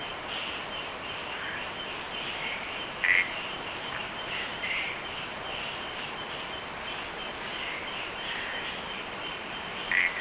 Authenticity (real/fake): fake